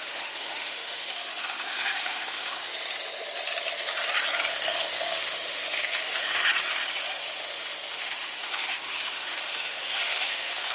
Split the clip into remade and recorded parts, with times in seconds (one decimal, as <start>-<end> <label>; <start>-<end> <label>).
0.0-2.6 remade; 2.6-4.5 recorded; 4.5-6.4 remade; 6.4-7.2 recorded; 7.2-10.7 remade